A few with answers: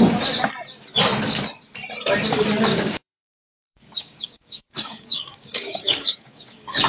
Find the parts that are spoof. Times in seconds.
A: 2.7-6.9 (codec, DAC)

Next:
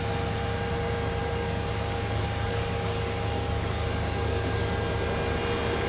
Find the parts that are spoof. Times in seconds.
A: 1.2-4.7 (codec, DAC)

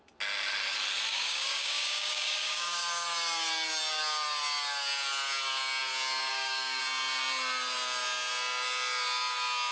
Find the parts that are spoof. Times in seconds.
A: 1.1-2.8 (codec, DAC); 6.3-6.8

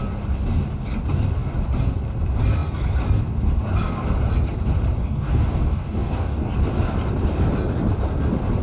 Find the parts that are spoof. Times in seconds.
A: 5.0-6.5 (codec, DAC)

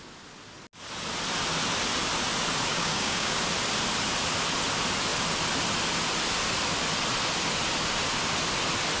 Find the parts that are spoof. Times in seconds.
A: 2.7-3.3 (codec, DAC)

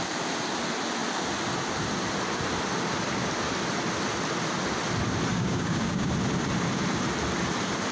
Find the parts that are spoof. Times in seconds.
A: 5.3-6.1 (codec, DAC)

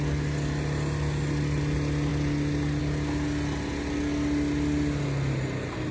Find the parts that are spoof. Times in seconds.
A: none

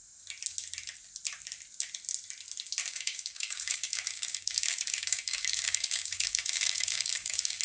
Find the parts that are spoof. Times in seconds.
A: 2.8-7.6 (codec, DAC)